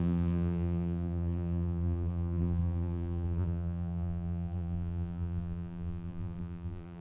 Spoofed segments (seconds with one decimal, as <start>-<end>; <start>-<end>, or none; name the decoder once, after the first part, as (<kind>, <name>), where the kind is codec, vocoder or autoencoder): 0.0-7.0 (vocoder, BigVGAN v2)